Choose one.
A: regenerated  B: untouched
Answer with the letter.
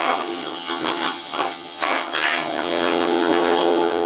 A